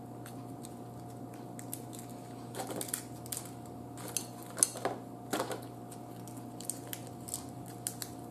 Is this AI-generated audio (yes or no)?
no